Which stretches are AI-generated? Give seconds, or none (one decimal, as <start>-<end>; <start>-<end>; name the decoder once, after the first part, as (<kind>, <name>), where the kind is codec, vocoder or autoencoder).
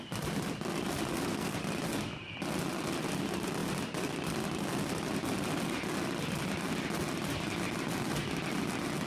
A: 1.1-1.6 (codec, SNAC)